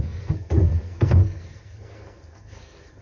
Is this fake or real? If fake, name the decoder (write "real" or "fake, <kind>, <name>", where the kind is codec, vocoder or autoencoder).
fake, codec, SNAC